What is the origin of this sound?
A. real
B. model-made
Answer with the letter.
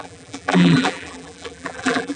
B